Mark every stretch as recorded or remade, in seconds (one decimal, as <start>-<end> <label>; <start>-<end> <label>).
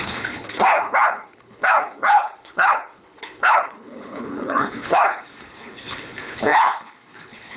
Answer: 0.0-7.6 remade